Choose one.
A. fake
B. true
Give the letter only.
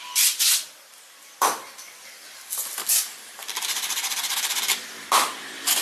A